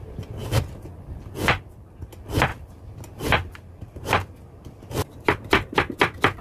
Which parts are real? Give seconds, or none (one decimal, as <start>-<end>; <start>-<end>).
2.5-4.9